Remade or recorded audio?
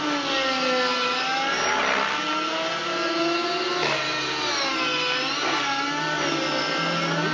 recorded